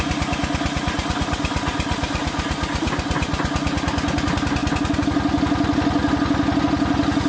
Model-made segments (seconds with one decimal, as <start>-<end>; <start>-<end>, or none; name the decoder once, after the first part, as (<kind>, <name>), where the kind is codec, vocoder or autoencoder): none